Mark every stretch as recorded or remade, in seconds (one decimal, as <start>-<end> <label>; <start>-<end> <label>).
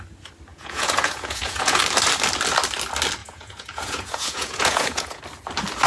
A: 0.0-0.5 recorded; 0.5-1.8 remade; 1.8-3.2 recorded; 3.2-5.2 remade; 5.2-5.9 recorded